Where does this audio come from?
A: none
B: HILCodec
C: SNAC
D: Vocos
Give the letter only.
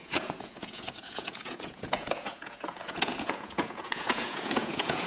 D